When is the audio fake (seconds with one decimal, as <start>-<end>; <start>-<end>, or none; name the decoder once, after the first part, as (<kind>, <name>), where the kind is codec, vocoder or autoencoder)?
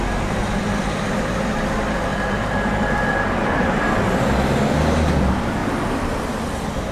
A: 2.1-3.1 (vocoder, BigVGAN v2); 5.6-6.4